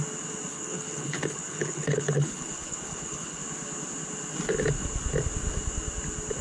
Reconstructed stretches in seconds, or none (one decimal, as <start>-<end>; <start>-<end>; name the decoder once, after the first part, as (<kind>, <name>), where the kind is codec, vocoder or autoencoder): 0.5-3.4 (codec, HILCodec)